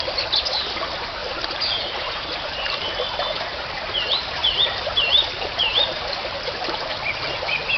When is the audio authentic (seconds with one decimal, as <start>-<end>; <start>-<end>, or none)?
0.0-1.2; 2.8-4.4; 7.1-7.8